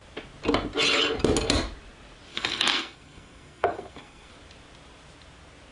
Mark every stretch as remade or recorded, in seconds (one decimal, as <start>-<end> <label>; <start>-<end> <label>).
0.0-2.3 recorded; 2.3-4.3 remade; 4.3-5.7 recorded